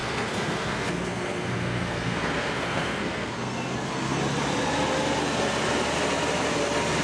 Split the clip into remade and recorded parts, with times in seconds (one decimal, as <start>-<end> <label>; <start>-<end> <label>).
0.0-4.2 remade; 4.2-7.0 recorded